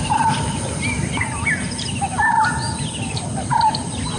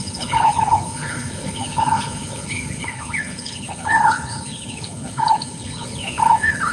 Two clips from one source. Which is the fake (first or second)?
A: second